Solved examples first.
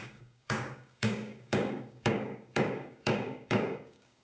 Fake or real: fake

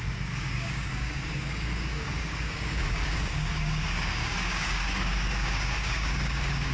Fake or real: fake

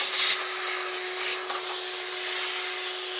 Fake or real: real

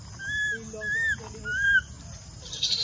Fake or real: real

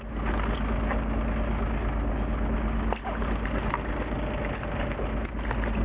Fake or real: real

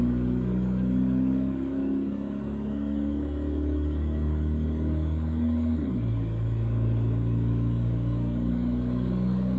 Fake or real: fake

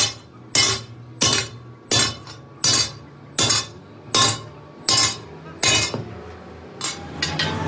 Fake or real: real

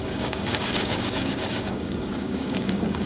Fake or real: fake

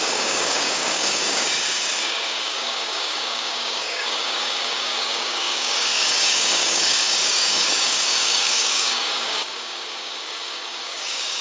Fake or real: fake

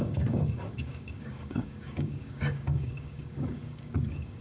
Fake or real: fake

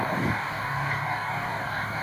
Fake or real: fake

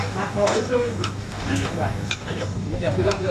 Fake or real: fake